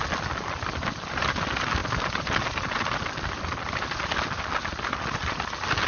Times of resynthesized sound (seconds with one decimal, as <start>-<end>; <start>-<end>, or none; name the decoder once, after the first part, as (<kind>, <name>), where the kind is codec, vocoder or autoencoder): none